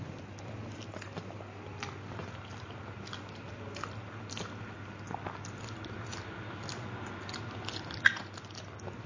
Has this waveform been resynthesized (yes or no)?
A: no